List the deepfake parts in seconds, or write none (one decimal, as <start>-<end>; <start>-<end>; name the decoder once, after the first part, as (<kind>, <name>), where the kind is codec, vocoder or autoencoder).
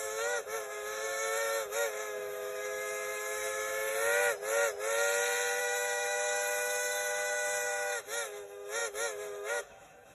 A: 0.0-3.9 (autoencoder, DAC-VAE); 5.6-10.1